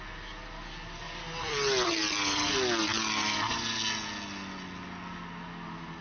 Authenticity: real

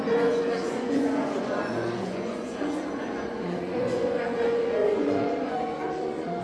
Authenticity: fake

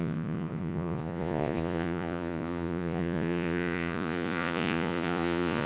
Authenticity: fake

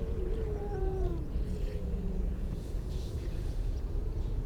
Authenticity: fake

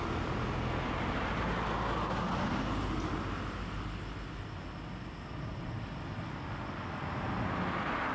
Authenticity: real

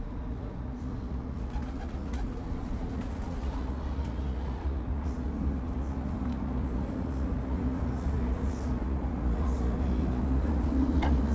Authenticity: fake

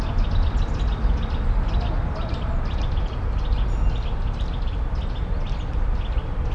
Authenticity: real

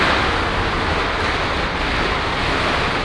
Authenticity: real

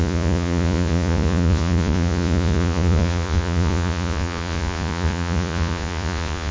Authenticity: fake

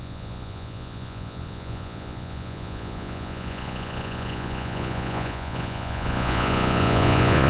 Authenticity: fake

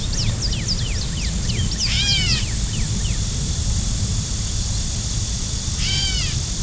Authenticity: real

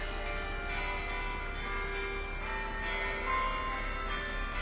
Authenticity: real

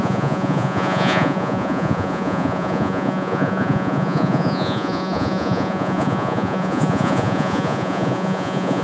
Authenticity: fake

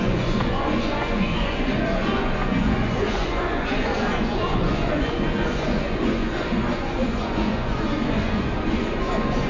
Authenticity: fake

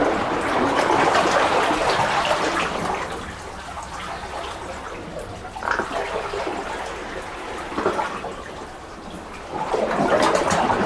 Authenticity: real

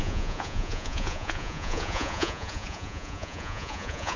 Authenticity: fake